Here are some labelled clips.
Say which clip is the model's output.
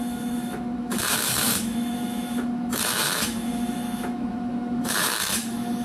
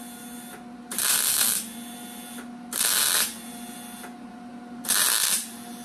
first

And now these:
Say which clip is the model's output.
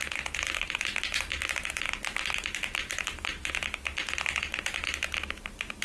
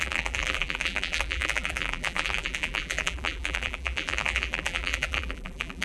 second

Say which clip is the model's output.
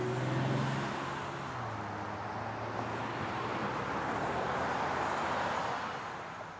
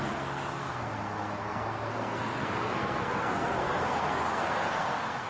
second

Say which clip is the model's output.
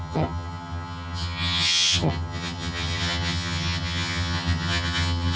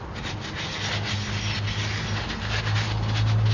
first